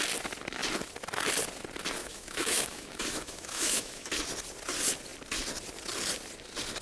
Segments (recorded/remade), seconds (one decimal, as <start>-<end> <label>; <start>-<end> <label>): 0.0-2.0 recorded; 2.0-4.1 remade; 4.1-6.8 recorded